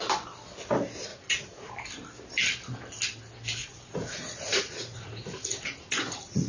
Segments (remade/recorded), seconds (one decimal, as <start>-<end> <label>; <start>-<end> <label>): 0.0-1.1 recorded; 1.1-1.7 remade; 1.7-3.6 recorded; 3.6-6.5 remade